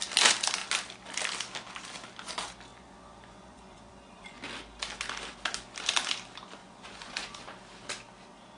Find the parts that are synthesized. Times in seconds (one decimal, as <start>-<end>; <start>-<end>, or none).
2.7-4.4; 6.6-7.4